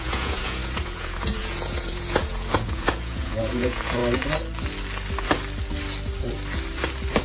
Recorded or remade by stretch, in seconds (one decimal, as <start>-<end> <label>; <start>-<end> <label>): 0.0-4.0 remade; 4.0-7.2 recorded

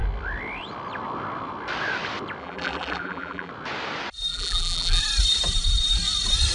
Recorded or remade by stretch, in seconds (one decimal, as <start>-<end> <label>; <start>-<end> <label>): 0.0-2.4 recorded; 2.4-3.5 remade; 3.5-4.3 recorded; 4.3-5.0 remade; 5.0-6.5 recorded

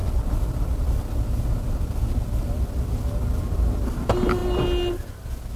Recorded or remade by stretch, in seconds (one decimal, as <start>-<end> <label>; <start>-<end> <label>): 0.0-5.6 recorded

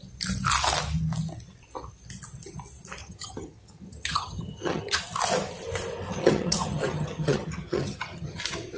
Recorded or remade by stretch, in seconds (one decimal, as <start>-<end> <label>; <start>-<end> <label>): 0.0-3.0 recorded; 3.0-5.0 remade; 5.0-6.1 recorded; 6.1-8.4 remade; 8.4-8.8 recorded

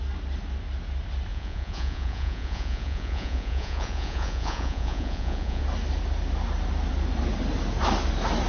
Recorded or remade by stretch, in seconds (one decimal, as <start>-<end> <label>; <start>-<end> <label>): 0.0-1.3 recorded; 1.3-5.6 remade; 5.6-8.5 recorded